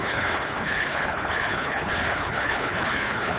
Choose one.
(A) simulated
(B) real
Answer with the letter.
A